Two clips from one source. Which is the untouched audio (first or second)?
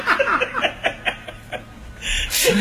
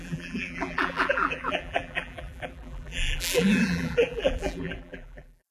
first